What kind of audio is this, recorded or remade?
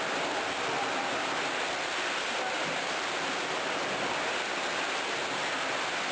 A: recorded